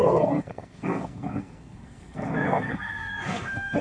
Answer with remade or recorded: remade